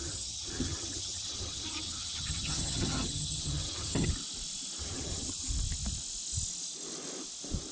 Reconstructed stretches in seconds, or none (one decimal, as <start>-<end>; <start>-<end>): 0.0-4.1; 4.8-5.5